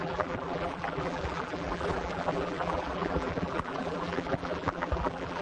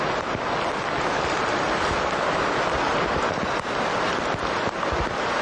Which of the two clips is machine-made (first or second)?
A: first